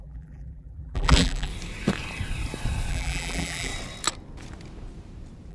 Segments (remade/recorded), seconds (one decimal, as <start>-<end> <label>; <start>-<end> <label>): 0.0-1.5 remade; 1.5-2.9 recorded; 2.9-3.7 remade; 3.7-5.5 recorded